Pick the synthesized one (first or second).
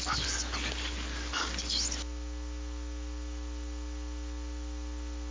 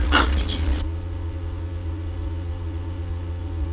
second